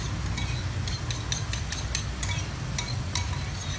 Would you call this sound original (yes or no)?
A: yes